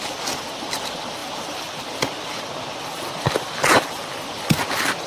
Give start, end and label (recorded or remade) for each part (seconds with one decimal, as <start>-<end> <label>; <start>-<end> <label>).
0.0-5.1 recorded

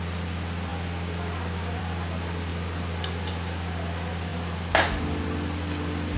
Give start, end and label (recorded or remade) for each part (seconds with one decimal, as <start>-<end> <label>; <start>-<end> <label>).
0.0-6.2 recorded

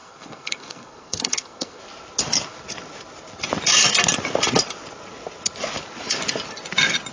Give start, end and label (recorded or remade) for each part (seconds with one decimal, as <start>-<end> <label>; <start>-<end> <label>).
0.0-1.8 remade; 1.8-7.1 recorded